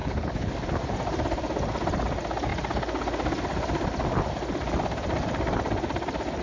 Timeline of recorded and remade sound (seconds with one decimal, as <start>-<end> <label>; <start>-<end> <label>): 0.0-0.5 remade; 0.5-6.4 recorded